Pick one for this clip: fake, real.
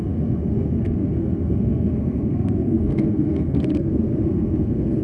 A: fake